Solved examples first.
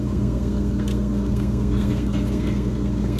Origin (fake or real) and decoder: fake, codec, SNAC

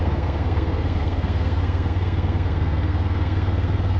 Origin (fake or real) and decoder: fake, codec, SNAC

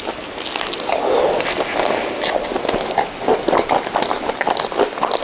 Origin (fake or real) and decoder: real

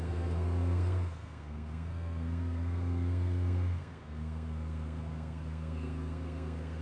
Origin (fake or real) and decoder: fake, codec, SNAC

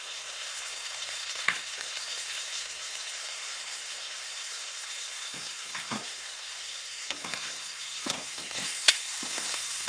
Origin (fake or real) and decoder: fake, codec, SNAC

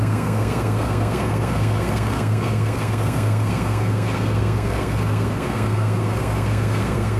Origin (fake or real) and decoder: fake, codec, SNAC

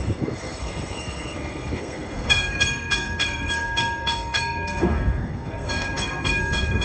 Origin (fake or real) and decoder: fake, codec, SNAC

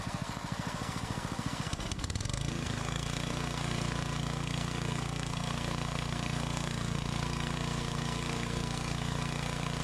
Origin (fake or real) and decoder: fake, codec, SNAC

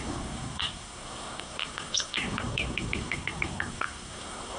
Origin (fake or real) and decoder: fake, codec, SNAC